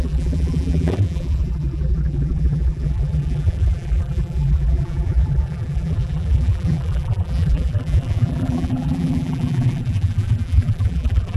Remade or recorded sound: remade